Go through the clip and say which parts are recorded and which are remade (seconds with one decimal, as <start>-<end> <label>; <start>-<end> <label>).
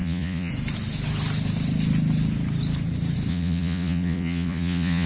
0.0-0.5 remade; 0.5-3.3 recorded; 3.3-5.1 remade